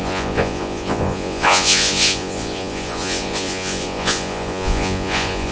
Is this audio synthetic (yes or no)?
yes